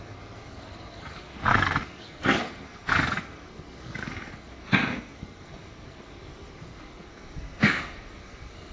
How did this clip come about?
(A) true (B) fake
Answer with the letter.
B